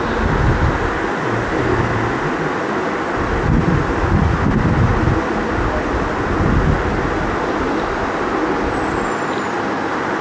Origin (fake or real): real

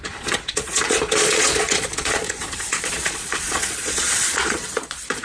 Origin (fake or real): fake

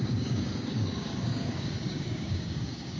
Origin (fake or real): fake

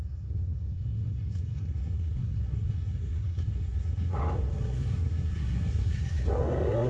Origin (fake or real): fake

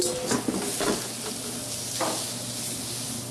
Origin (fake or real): real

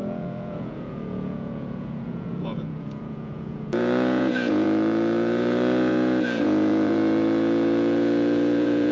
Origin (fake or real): fake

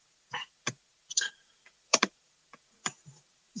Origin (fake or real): fake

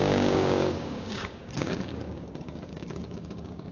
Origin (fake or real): fake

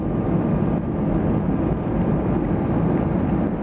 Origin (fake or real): real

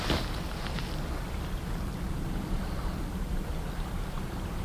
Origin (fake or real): real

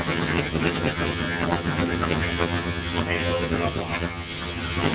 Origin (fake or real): fake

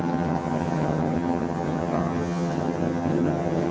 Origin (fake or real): fake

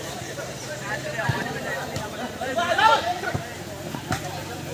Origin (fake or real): fake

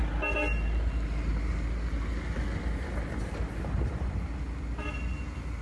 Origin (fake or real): real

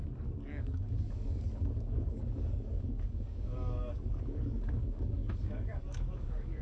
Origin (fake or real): fake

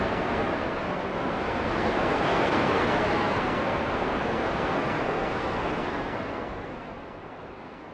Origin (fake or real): fake